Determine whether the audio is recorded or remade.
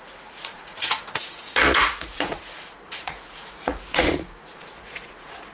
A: remade